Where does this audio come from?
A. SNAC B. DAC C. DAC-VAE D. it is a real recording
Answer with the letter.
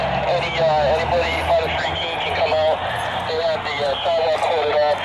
D